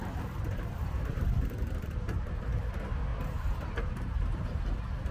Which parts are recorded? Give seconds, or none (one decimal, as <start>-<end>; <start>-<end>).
2.6-3.1; 4.6-5.1